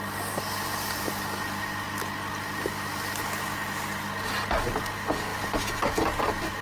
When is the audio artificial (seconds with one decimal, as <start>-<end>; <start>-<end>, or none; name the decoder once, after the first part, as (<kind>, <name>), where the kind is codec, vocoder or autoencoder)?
none